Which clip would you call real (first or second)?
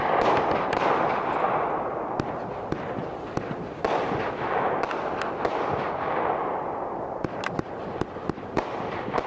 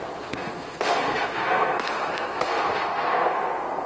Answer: first